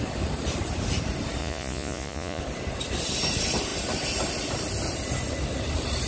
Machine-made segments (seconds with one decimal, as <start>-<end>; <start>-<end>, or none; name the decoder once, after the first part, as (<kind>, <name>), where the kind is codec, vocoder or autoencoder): 1.4-2.4 (vocoder, Vocos)